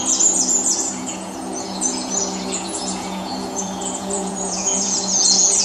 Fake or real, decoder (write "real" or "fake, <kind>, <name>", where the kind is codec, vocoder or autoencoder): fake, vocoder, Vocos